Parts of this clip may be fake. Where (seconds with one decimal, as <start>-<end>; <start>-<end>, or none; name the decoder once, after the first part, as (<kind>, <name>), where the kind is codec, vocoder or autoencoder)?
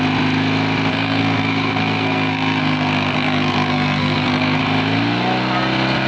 0.9-4.6 (codec, SNAC)